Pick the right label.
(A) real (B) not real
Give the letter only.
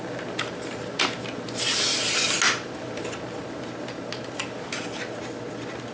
A